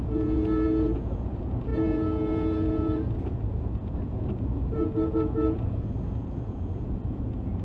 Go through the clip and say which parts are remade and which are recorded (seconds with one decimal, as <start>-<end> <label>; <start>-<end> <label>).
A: 0.0-7.6 remade